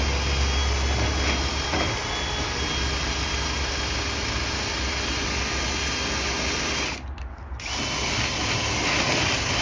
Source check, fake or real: real